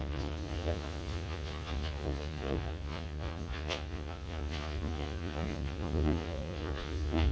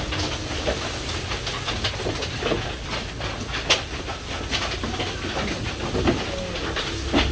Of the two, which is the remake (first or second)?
first